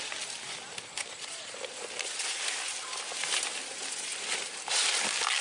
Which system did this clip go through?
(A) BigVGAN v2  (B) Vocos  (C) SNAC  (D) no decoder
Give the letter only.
D